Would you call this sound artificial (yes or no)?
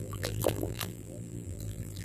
yes